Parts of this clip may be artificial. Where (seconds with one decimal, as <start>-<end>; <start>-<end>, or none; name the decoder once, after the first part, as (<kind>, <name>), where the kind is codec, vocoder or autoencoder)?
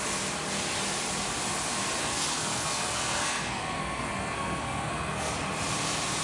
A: 2.0-5.3 (codec, SNAC)